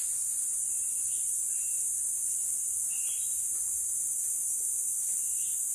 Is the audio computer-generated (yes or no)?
no